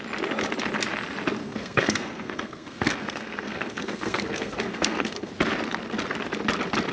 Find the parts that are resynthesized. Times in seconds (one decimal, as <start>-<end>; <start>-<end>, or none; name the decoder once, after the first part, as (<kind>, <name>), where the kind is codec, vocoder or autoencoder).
1.4-5.3 (codec, SNAC)